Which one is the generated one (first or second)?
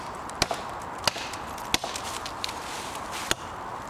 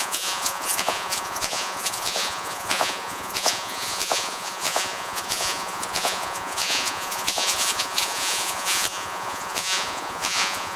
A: second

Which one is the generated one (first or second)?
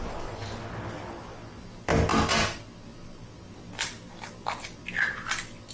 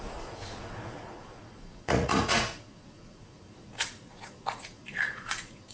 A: second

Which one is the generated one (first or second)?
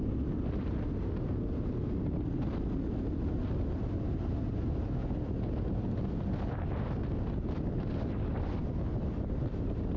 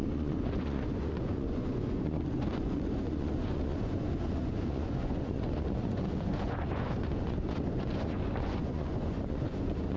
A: second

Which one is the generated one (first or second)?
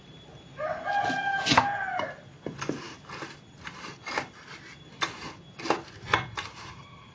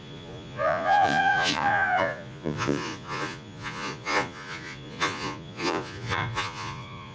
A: second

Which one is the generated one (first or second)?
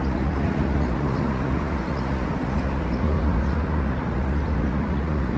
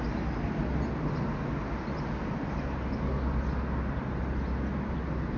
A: first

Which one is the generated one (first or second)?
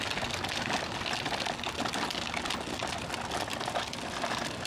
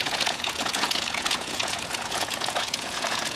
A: second